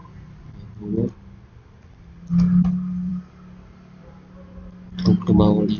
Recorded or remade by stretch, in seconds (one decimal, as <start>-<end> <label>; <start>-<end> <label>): 0.0-5.8 recorded